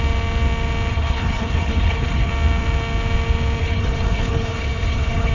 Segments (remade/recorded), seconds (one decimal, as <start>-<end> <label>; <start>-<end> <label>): 0.0-0.9 recorded; 0.9-2.3 remade; 2.3-3.6 recorded; 3.6-5.3 remade

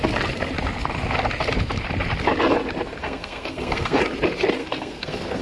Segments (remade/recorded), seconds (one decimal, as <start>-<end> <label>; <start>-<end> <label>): 0.0-3.0 recorded; 3.0-4.0 remade; 4.0-4.6 recorded; 4.6-5.4 remade

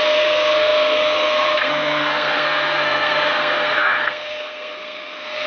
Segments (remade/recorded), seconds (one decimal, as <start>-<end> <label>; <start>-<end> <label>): 0.0-5.5 remade

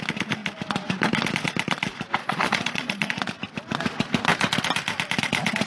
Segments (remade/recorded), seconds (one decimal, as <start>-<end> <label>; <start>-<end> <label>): 0.0-2.2 recorded; 2.2-3.2 remade; 3.2-5.7 recorded

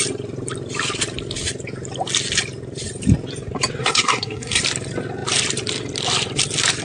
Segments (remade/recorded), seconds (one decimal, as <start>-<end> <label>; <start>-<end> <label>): 0.0-3.8 recorded; 3.8-4.6 remade; 4.6-6.8 recorded

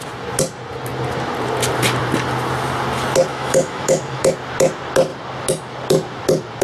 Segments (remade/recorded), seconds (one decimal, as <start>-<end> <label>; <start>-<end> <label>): 0.0-3.3 recorded; 3.3-4.3 remade; 4.3-6.6 recorded